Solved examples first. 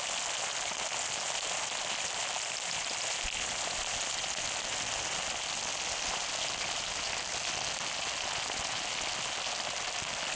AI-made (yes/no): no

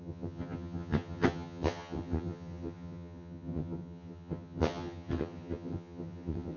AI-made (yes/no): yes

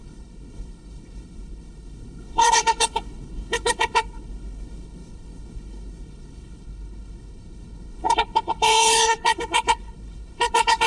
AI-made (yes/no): yes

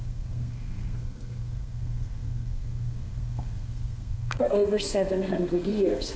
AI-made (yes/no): yes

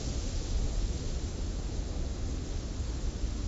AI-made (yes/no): no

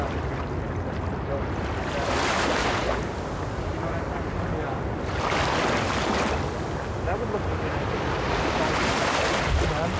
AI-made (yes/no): no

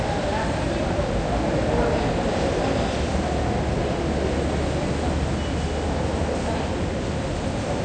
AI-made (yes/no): no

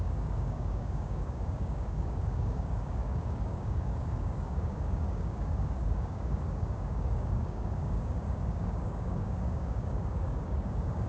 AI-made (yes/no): yes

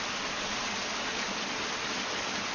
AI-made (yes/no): no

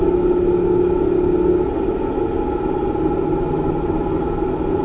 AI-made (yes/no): no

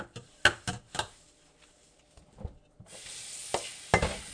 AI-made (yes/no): no